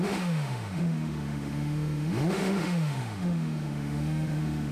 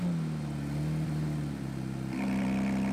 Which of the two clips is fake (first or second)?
first